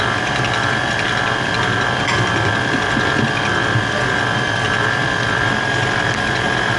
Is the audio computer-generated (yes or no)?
no